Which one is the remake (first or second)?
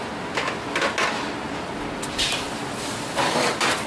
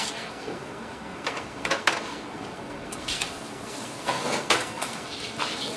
second